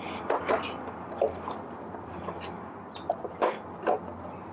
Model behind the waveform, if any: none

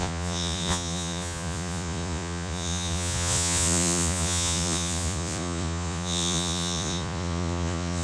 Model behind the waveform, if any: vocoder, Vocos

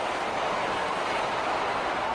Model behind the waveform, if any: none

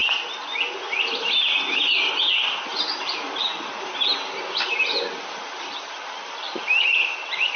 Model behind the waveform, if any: none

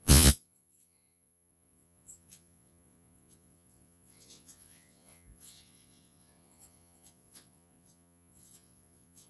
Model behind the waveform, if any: vocoder, Vocos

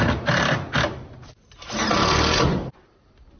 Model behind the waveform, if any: none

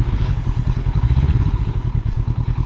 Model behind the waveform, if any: codec, HILCodec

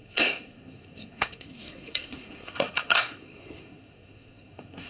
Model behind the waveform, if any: codec, SNAC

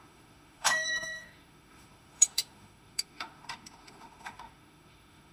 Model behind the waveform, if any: autoencoder, DAC-VAE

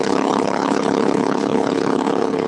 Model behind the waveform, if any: codec, HILCodec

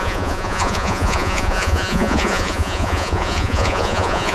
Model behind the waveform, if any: vocoder, Vocos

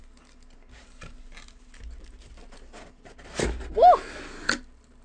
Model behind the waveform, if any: none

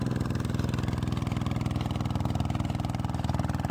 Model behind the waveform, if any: none